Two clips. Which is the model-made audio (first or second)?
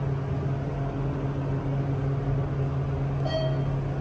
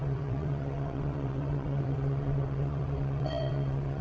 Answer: second